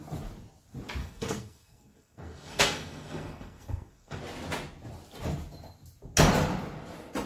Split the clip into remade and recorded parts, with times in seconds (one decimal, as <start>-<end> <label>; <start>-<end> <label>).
0.0-1.0 recorded; 1.0-4.2 remade; 4.2-7.3 recorded